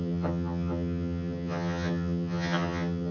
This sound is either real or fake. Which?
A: fake